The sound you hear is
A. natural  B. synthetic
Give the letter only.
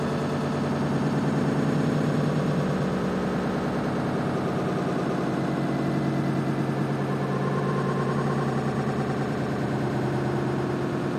A